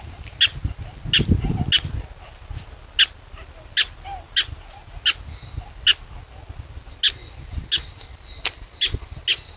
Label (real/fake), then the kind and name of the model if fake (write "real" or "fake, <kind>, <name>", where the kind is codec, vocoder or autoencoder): real